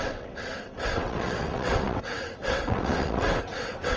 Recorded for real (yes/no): no